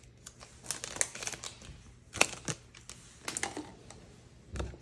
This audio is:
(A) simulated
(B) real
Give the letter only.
B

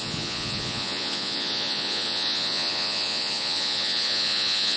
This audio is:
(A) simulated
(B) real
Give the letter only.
A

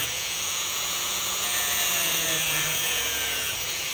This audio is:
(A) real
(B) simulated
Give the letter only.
B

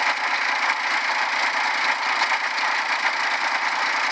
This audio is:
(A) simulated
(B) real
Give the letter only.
B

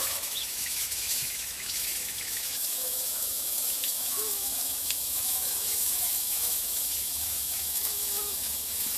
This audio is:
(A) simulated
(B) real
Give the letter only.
A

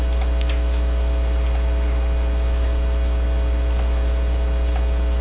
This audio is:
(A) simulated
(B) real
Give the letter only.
B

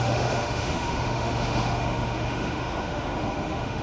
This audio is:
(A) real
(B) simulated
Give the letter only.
B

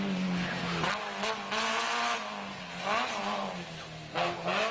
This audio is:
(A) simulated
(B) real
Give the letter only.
B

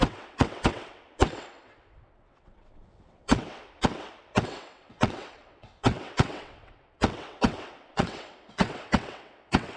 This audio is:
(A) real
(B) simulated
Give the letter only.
B